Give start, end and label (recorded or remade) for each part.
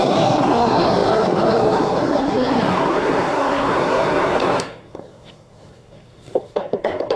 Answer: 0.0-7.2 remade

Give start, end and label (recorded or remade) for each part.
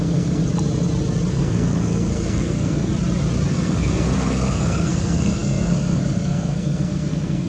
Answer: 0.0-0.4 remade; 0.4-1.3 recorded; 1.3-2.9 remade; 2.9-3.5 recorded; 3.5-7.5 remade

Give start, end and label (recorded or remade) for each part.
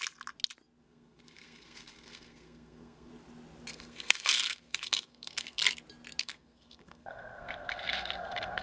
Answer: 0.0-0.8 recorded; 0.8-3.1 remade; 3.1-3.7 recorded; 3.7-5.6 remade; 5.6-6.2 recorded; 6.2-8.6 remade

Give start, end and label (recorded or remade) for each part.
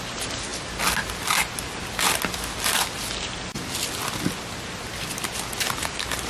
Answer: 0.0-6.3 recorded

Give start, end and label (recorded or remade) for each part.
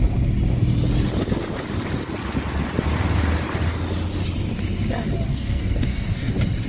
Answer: 0.0-5.3 recorded; 5.3-6.3 remade; 6.3-6.7 recorded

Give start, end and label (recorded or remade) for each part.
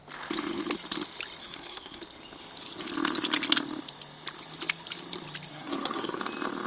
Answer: 0.0-1.4 recorded; 1.4-2.0 remade; 2.0-5.5 recorded; 5.5-6.2 remade; 6.2-6.7 recorded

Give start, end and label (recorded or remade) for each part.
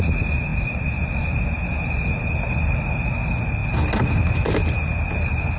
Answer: 0.0-5.6 recorded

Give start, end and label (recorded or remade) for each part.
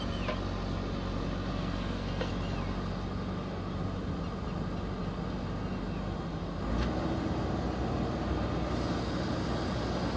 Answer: 0.0-1.5 recorded; 1.5-2.3 remade; 2.3-10.2 recorded